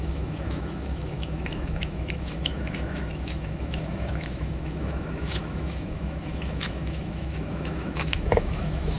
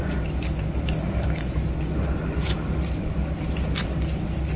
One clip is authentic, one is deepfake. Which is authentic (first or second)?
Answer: second